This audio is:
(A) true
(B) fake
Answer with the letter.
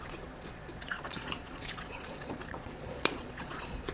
B